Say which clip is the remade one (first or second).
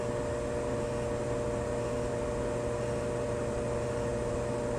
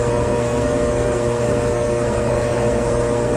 second